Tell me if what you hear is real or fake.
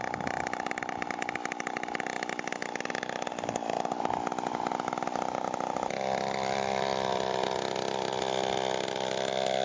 real